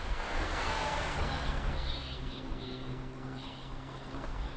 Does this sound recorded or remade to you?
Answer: remade